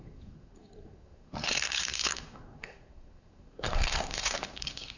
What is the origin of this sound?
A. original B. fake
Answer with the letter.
B